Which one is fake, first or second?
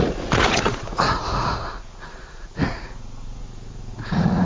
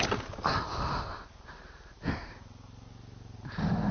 first